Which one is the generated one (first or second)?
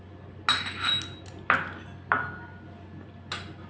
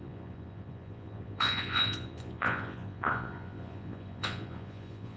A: second